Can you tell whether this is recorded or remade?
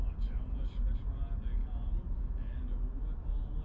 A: recorded